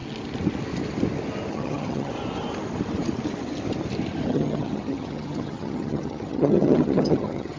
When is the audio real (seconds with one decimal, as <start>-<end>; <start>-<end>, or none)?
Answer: 0.0-1.5; 2.1-4.3

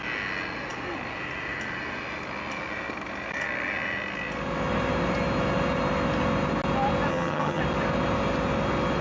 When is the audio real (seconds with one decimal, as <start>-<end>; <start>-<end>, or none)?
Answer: 0.0-7.1; 7.6-9.0

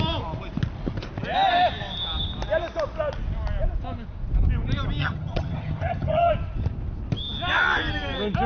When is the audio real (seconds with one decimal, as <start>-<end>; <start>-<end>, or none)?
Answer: 0.0-5.0; 6.3-8.5

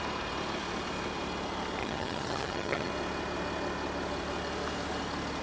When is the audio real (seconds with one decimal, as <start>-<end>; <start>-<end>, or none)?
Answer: 0.0-1.8; 2.9-5.4

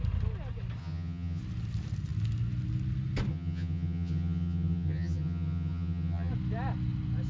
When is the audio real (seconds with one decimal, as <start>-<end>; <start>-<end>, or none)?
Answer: 0.0-0.8; 1.4-3.3; 6.3-7.3

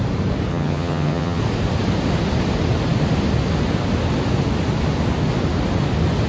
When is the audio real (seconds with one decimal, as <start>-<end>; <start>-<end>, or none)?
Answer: 0.0-0.5; 1.4-6.3